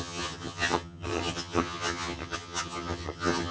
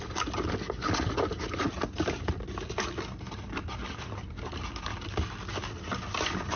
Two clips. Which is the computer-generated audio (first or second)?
first